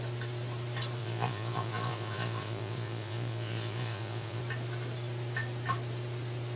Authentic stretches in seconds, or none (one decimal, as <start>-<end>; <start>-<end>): 0.0-1.0; 4.4-6.6